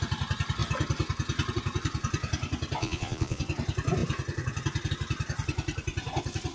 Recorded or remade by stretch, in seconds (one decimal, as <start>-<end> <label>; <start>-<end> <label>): 0.0-2.8 recorded; 2.8-3.4 remade; 3.4-6.5 recorded